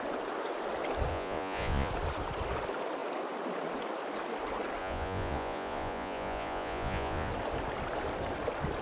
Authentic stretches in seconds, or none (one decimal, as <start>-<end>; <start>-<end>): 0.0-1.1; 1.9-4.8; 7.3-8.8